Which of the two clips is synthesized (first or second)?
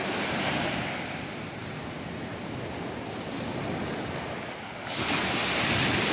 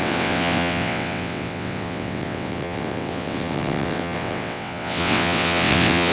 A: second